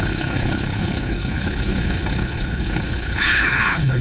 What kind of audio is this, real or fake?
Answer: fake